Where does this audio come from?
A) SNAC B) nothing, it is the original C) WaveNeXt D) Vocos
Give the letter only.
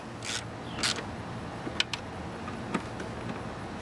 B